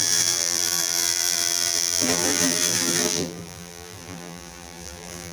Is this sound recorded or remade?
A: remade